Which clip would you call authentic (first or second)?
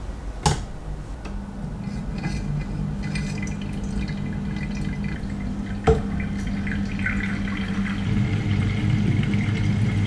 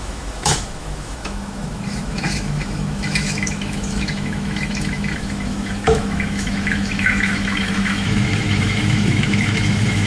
first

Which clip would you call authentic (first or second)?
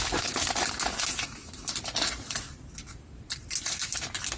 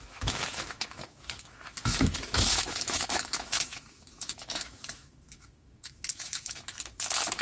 first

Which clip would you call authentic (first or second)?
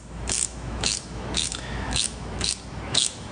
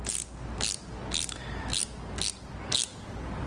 second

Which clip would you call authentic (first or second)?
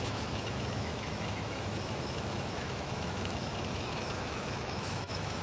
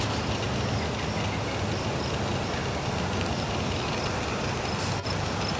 second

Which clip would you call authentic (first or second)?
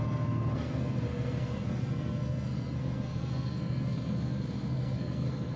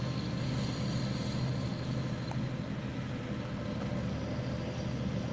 second